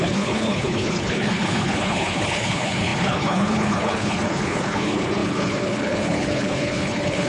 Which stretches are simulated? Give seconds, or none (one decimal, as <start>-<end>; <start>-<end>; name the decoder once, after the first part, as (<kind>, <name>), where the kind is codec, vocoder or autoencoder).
0.0-7.3 (codec, HILCodec)